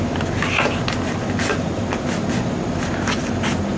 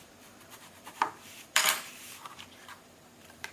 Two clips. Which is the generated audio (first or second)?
second